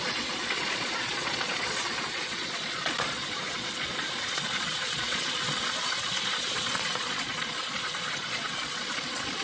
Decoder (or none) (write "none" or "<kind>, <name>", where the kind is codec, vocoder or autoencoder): vocoder, Vocos